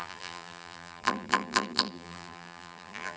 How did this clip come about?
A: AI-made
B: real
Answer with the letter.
A